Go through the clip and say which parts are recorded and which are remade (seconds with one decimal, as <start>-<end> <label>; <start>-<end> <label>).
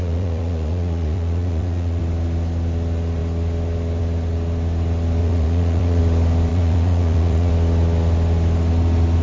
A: 0.0-2.0 remade; 2.0-5.2 recorded; 5.2-6.0 remade; 6.0-6.5 recorded; 6.5-7.5 remade; 7.5-9.2 recorded